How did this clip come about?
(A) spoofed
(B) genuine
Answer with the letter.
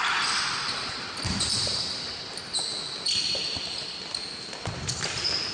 B